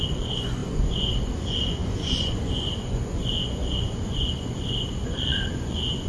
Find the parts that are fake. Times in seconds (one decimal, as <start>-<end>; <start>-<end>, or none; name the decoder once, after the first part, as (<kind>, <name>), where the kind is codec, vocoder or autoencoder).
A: 0.0-6.1 (vocoder, Vocos)